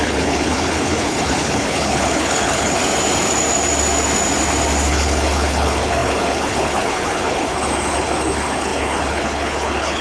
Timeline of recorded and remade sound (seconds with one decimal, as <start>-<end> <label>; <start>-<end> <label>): 0.0-2.8 remade; 2.8-4.9 recorded; 4.9-10.0 remade